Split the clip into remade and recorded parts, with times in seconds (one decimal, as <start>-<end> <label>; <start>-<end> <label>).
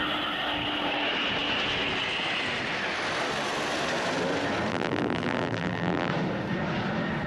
0.0-4.7 recorded; 4.7-6.1 remade; 6.1-7.3 recorded